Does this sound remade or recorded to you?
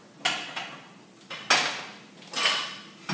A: recorded